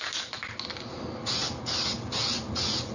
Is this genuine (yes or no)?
yes